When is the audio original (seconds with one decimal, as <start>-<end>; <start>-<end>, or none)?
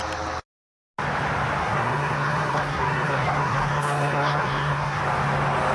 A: 0.0-1.6; 5.0-5.7